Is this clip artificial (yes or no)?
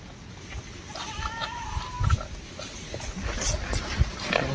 no